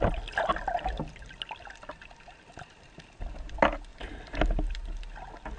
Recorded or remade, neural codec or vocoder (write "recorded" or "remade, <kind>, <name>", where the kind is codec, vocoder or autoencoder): recorded